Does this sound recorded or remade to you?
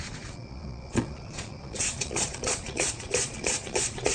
remade